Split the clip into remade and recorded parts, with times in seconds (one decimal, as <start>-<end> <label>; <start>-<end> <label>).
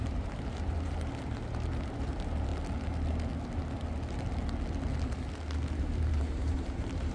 0.0-2.5 remade; 2.5-5.8 recorded; 5.8-7.1 remade